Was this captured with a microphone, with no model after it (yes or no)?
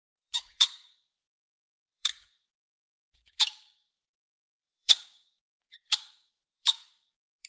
no